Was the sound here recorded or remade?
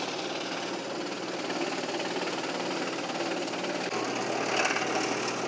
recorded